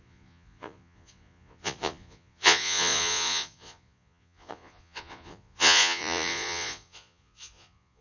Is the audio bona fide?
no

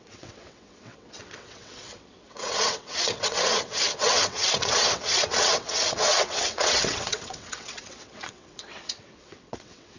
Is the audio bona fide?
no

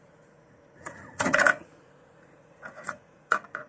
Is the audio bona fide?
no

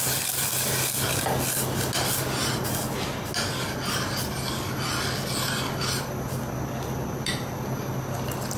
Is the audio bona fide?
yes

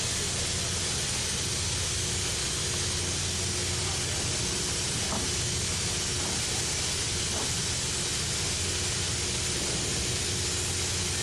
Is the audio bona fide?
yes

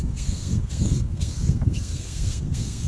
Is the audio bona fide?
no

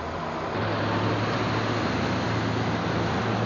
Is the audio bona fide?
yes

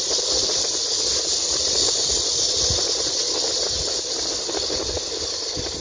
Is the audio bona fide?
yes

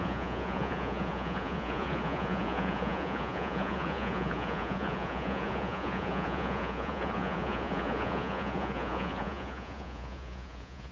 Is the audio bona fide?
no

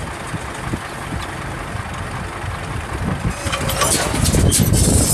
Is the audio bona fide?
yes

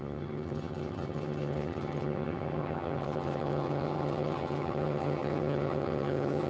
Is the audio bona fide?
no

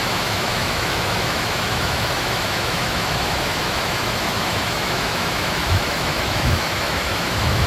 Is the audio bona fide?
no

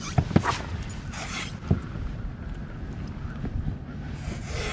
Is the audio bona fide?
yes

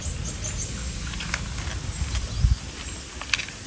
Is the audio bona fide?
yes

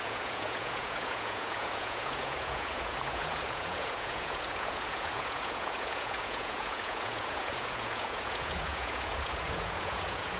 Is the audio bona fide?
no